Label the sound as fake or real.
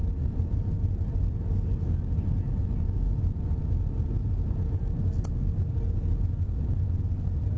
real